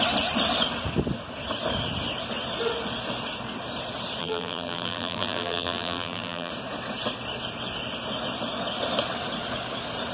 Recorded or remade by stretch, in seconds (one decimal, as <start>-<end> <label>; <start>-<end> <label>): 0.0-4.2 recorded; 4.2-6.5 remade; 6.5-10.1 recorded